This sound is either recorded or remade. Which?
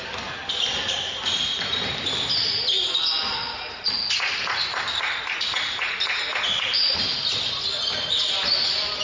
recorded